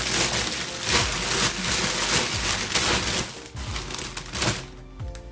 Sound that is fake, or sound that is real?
real